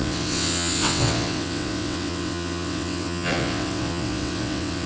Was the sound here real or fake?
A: fake